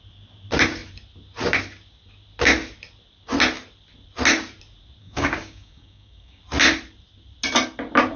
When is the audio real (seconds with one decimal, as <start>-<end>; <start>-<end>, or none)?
0.0-5.0; 6.4-8.2